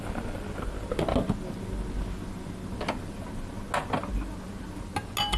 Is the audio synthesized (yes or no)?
no